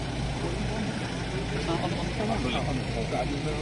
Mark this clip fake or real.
real